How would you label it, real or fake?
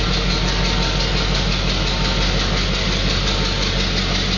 real